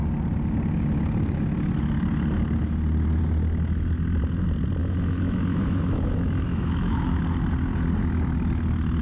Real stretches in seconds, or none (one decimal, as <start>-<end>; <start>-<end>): 0.0-4.8; 7.2-9.0